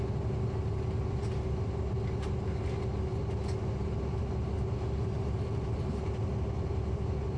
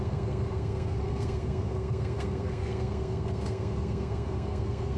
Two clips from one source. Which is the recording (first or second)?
first